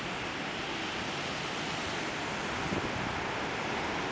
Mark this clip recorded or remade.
recorded